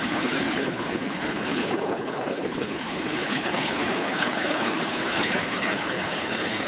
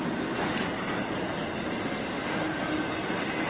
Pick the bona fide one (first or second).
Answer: second